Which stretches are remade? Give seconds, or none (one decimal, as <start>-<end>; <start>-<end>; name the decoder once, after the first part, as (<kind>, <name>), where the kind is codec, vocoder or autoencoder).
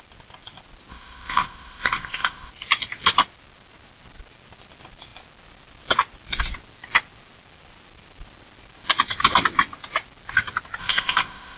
0.9-2.5 (codec, ZipCodec); 10.8-11.6